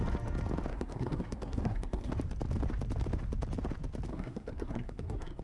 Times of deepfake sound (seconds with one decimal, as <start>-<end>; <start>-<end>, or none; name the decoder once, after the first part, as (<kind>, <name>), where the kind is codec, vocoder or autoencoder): 0.7-2.1 (codec, SNAC); 4.1-5.4